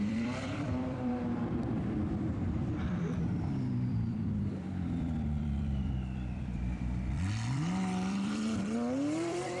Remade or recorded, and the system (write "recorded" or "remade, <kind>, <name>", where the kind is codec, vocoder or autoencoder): remade, vocoder, BigVGAN v2